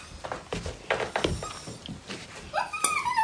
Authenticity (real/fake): real